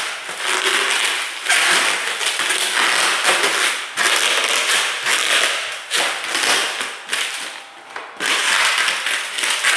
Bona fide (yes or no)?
yes